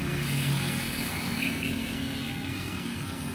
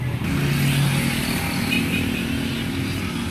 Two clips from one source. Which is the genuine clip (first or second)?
second